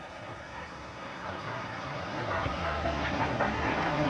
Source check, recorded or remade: remade